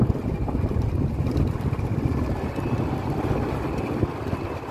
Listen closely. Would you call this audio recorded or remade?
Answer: recorded